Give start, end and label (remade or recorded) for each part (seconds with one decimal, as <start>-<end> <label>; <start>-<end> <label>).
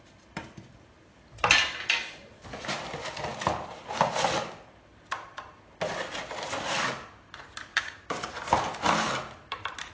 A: 0.0-7.7 recorded; 7.7-8.2 remade; 8.2-9.9 recorded